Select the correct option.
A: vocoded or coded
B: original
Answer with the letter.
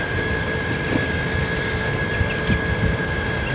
B